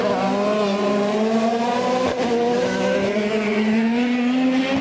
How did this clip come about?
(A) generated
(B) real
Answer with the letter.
B